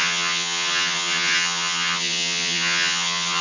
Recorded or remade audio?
remade